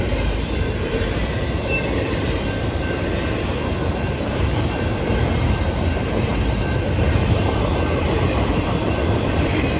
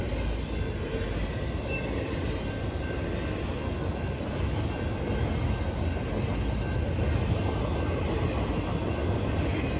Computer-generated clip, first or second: first